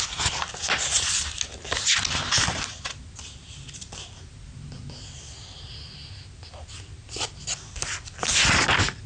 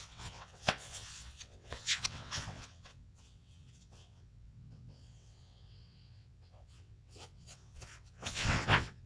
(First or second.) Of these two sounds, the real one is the first